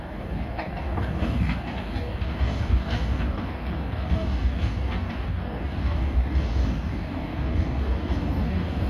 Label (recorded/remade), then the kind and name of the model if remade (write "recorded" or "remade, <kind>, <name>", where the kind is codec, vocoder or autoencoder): remade, codec, DAC